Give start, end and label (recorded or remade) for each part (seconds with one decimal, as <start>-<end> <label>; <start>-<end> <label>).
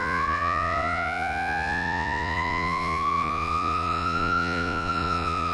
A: 0.0-5.5 remade